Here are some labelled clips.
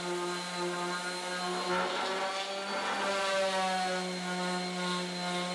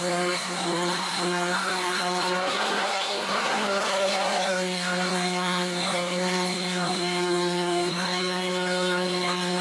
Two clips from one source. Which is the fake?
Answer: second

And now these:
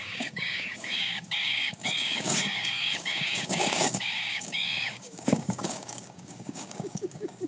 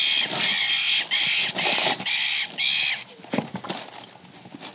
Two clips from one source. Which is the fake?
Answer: first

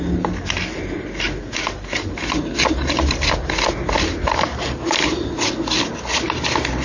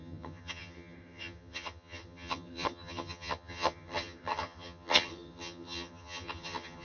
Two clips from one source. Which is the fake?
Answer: second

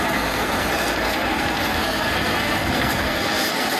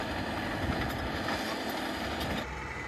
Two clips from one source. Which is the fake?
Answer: first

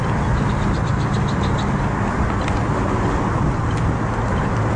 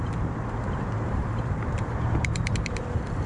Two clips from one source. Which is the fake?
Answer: second